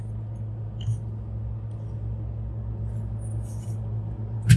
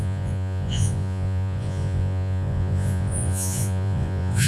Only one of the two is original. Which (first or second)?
first